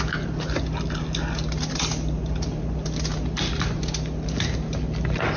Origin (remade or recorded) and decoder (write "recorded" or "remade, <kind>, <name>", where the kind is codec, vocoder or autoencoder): recorded